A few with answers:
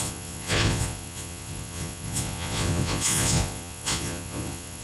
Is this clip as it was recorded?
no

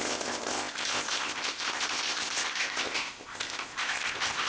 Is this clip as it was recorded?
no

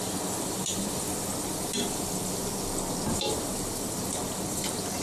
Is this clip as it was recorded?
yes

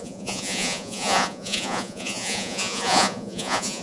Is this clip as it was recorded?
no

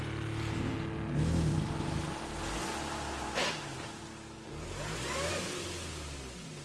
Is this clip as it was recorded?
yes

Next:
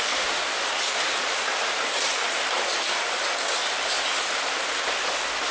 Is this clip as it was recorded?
yes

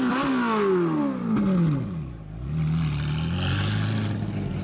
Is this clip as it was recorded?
yes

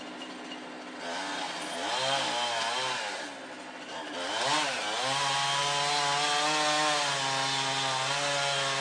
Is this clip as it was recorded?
yes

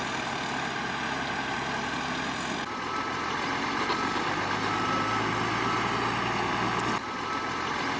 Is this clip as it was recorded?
yes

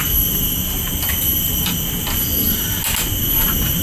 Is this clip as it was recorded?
yes